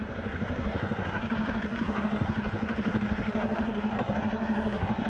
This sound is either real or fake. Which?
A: fake